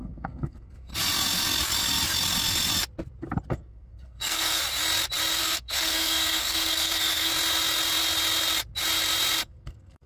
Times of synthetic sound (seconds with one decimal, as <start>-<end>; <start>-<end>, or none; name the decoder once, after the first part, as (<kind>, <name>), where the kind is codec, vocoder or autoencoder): 0.0-0.9 (codec, SNAC); 3.5-4.6; 5.4-7.3; 9.4-10.1